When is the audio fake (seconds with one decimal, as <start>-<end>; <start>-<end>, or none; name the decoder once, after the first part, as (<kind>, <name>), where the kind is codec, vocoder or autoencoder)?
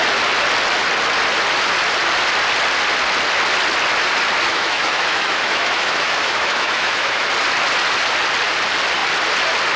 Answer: 4.5-7.3 (autoencoder, DAC-VAE)